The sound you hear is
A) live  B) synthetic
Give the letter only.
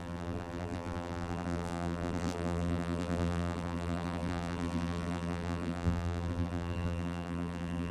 B